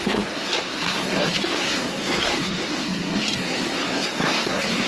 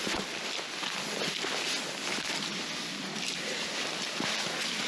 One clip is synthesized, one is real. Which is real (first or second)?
second